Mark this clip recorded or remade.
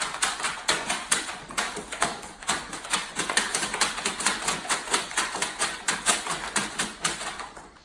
remade